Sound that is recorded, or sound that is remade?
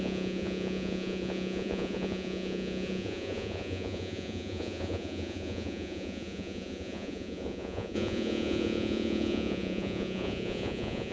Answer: remade